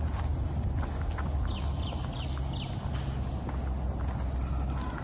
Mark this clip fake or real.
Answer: real